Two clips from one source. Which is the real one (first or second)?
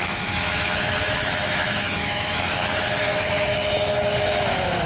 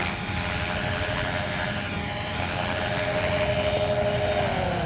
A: second